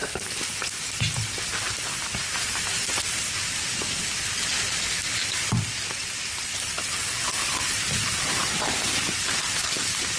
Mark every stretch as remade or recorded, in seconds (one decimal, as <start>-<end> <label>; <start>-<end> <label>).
0.0-1.7 recorded; 1.7-10.2 remade